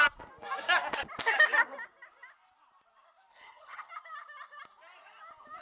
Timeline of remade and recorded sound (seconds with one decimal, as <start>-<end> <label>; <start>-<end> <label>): 0.0-3.3 recorded; 3.3-3.9 remade; 3.9-5.6 recorded